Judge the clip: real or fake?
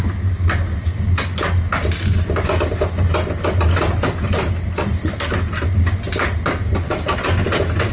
real